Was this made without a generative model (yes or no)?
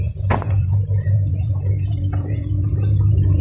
no